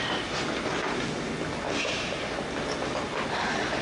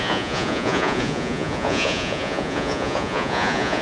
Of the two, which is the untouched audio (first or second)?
first